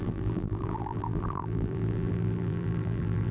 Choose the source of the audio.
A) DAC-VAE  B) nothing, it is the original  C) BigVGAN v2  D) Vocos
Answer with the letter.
C